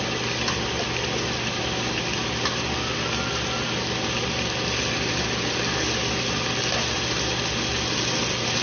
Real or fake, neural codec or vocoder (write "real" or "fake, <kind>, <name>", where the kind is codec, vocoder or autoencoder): real